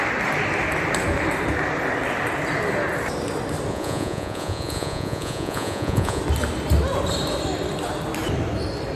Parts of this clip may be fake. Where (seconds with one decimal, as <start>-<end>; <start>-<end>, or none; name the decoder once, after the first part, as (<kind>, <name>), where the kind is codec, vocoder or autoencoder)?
3.7-6.2 (vocoder, Vocos)